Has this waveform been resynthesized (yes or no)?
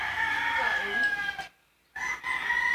no